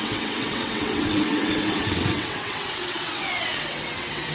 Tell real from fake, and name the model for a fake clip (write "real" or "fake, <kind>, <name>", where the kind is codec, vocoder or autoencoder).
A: fake, vocoder, WaveNeXt